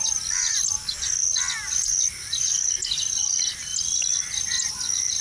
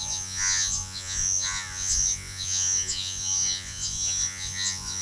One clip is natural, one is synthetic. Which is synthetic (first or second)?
second